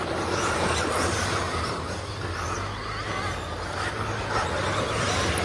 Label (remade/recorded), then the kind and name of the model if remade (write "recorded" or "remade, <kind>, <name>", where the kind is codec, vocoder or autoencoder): recorded